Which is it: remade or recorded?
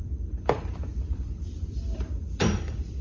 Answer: remade